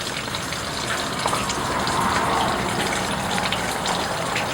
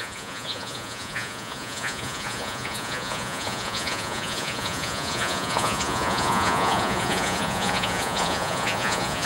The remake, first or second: second